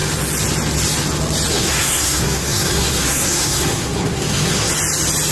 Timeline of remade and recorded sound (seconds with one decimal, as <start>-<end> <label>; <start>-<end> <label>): 0.0-1.5 recorded; 1.5-4.7 remade; 4.7-5.3 recorded

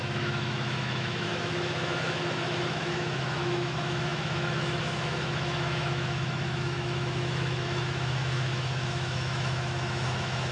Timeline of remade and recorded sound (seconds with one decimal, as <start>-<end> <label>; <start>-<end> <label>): 0.0-10.5 remade

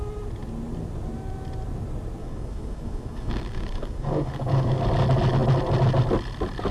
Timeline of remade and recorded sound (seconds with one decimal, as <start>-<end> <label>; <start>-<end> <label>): 0.0-2.2 recorded; 2.2-4.8 remade; 4.8-6.7 recorded

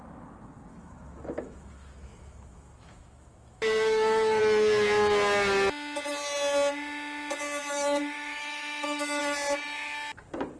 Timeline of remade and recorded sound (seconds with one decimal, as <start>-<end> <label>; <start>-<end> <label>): 0.0-0.7 recorded; 0.7-4.4 remade; 4.4-7.6 recorded; 7.6-9.2 remade; 9.2-10.6 recorded